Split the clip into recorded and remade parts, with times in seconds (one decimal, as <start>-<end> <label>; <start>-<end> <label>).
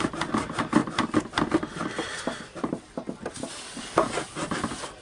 0.0-5.0 recorded